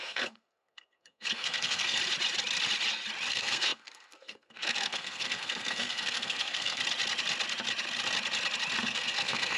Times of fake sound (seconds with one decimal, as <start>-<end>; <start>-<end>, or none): 0.0-2.0; 3.3-6.8; 8.8-9.6